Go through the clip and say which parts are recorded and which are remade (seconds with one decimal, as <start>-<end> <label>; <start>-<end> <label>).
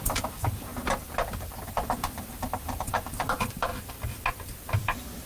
0.0-0.7 remade; 0.7-1.7 recorded; 1.7-3.7 remade; 3.7-5.3 recorded